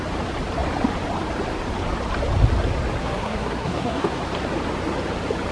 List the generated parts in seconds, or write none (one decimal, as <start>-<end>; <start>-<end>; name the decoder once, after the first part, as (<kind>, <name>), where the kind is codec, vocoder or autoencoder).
3.0-4.2 (codec, SNAC)